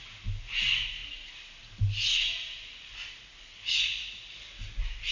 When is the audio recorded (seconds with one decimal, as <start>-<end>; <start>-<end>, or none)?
0.0-5.1